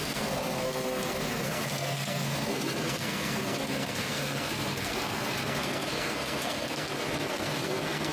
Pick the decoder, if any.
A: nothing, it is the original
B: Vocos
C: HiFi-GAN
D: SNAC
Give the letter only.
D